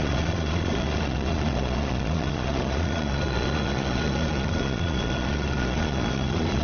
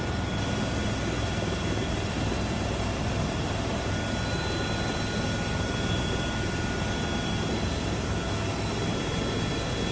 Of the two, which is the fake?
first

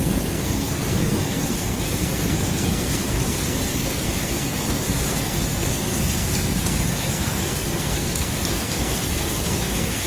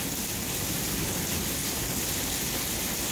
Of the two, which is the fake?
first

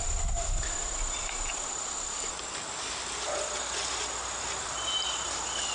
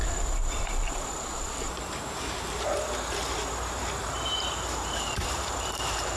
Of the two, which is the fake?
second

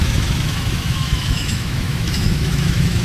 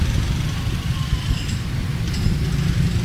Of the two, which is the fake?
first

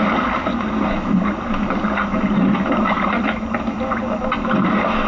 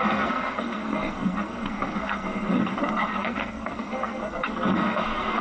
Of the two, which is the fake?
second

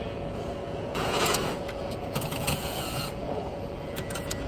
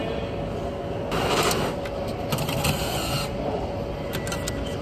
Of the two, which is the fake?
first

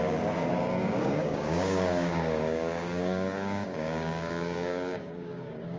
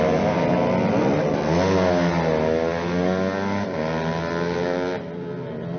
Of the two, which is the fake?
first